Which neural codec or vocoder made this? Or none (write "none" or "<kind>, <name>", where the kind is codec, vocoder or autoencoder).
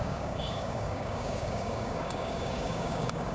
codec, DAC